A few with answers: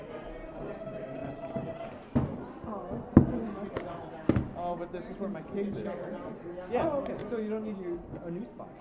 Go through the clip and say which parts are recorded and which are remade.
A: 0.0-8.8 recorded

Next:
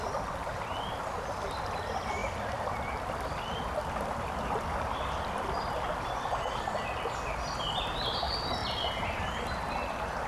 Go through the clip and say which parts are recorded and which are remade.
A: 0.0-2.2 recorded; 2.2-6.4 remade; 6.4-10.3 recorded

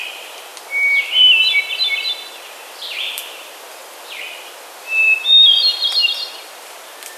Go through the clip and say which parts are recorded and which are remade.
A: 0.0-0.5 remade; 0.5-2.5 recorded; 2.5-3.8 remade; 3.8-7.2 recorded

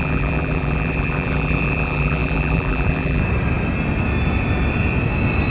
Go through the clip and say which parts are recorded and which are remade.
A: 0.0-3.2 remade; 3.2-5.5 recorded

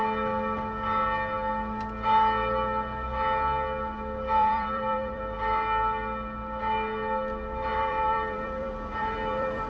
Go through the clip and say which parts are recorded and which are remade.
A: 0.0-4.4 recorded; 4.4-5.2 remade; 5.2-7.7 recorded; 7.7-9.7 remade